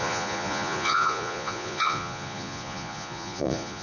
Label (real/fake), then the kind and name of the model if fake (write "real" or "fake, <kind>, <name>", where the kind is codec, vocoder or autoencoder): fake, vocoder, Vocos